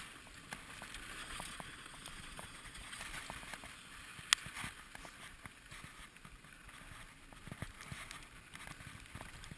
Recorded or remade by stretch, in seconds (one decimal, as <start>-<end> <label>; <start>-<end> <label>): 0.0-1.2 recorded; 1.2-3.0 remade; 3.0-9.6 recorded